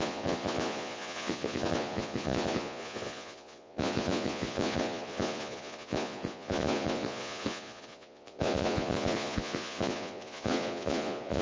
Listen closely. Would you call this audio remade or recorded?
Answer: remade